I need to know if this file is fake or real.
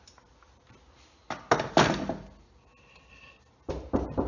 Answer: real